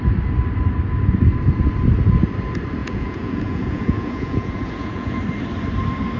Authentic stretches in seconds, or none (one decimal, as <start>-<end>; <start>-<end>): 0.0-2.8; 5.2-6.2